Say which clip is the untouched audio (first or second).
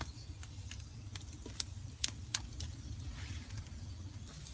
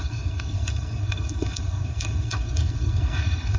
first